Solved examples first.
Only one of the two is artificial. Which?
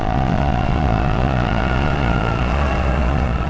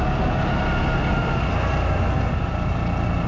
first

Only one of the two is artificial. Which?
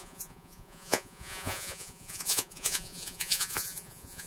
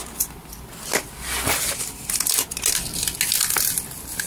first